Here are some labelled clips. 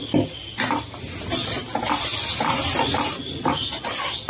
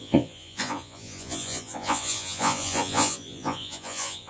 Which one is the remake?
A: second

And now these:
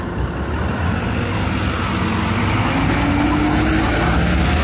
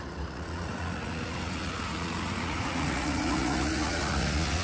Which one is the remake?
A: second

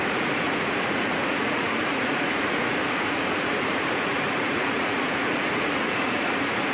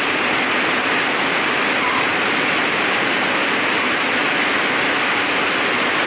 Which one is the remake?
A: first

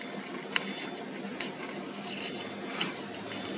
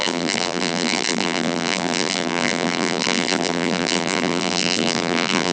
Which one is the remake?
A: second